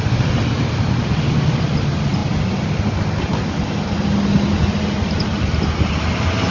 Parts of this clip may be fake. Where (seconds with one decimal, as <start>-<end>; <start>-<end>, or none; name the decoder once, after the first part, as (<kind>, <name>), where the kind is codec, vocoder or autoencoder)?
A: none